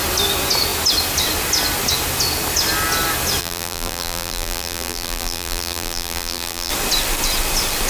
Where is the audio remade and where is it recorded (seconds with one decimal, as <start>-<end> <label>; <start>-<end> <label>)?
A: 0.0-3.4 recorded; 3.4-6.7 remade; 6.7-7.9 recorded